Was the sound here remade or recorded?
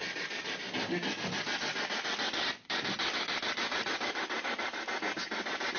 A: recorded